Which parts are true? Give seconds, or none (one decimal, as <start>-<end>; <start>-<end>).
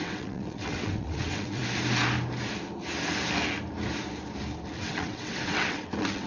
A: 1.6-4.8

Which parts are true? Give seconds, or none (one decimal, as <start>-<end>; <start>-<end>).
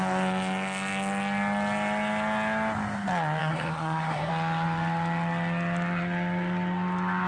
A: 0.0-3.4; 4.3-7.3